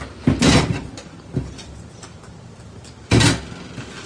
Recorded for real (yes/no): yes